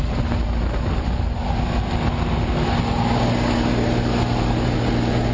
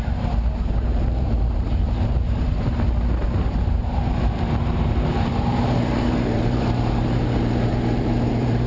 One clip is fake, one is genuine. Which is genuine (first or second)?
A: first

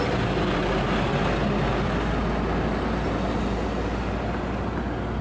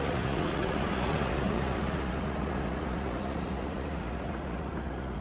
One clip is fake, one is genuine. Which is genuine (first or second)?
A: first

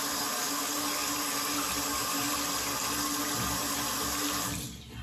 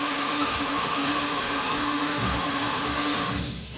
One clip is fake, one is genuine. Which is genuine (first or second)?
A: first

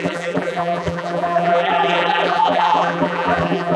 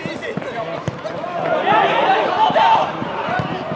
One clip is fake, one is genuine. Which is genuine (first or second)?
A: second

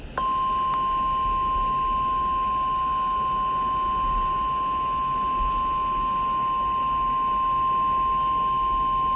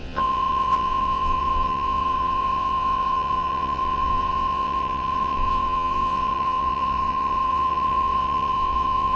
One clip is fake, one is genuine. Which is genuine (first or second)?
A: first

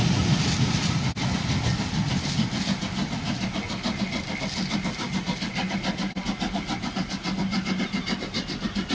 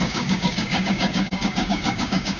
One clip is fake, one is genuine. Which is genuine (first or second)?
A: first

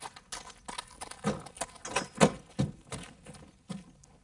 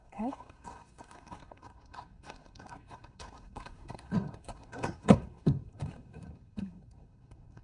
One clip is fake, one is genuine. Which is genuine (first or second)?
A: first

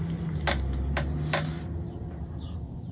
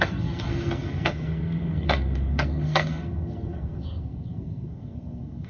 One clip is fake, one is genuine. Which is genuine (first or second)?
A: first